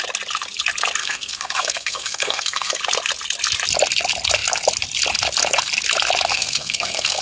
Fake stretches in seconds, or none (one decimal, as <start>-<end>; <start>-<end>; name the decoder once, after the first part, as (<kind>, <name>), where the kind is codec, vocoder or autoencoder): 1.0-2.8 (codec, SNAC); 6.3-7.2